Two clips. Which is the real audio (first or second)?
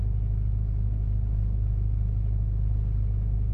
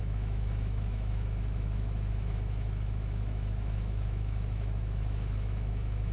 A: first